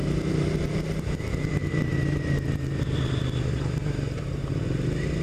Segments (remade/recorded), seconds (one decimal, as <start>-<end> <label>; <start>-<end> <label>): 0.0-2.8 remade; 2.8-5.2 recorded

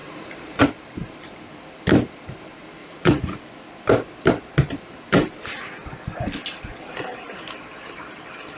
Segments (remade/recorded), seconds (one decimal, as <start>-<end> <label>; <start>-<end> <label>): 0.0-0.6 remade; 0.6-2.8 recorded; 2.8-3.4 remade; 3.4-8.6 recorded

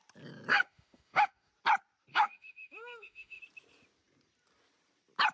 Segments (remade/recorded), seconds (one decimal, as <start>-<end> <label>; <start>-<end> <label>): 0.0-0.5 recorded; 0.5-1.5 remade; 1.5-2.1 recorded; 2.1-3.4 remade; 3.4-5.3 recorded

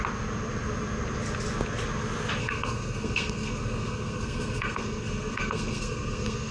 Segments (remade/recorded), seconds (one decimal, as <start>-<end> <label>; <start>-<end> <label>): 0.0-2.4 recorded; 2.4-6.5 remade

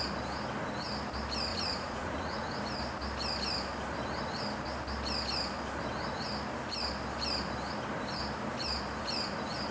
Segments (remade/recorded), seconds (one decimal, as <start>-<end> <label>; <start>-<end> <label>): 0.0-1.5 recorded; 1.5-2.6 remade; 2.6-9.7 recorded